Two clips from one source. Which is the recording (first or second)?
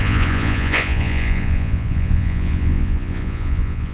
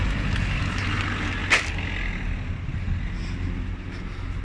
second